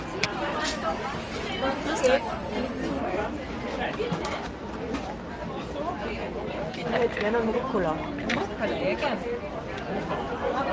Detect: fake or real real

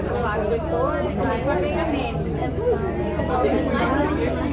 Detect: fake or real real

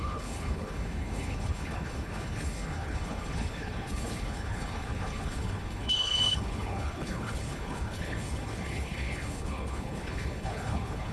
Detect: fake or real fake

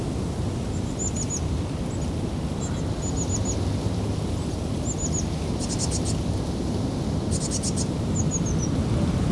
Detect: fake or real real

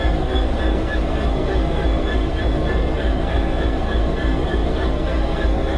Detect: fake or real fake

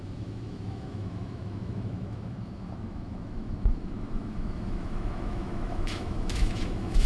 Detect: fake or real fake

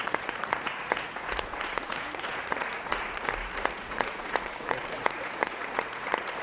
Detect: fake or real fake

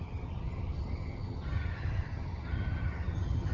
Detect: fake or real fake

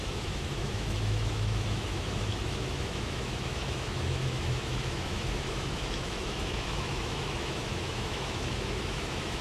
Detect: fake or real fake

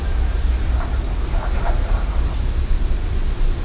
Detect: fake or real real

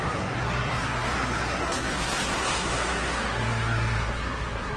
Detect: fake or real fake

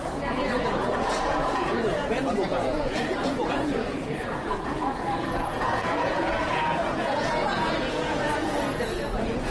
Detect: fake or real fake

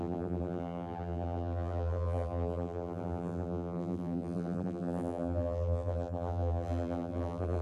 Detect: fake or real fake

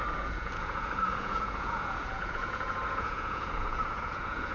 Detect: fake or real fake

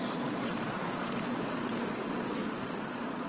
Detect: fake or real fake